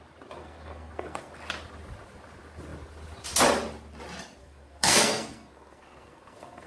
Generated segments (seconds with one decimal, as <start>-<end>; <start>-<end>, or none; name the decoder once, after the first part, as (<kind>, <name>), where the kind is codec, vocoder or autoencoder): 0.4-1.3 (codec, SNAC); 4.4-6.7

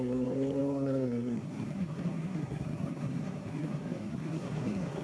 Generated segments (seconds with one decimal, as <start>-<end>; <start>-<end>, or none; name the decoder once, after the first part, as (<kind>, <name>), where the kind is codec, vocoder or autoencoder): 0.0-5.0 (codec, SNAC)

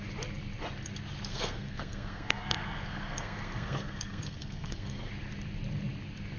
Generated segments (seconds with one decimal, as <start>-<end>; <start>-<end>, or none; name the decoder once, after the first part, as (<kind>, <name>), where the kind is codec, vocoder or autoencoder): 1.3-5.1 (codec, SNAC)